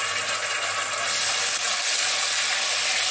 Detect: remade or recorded recorded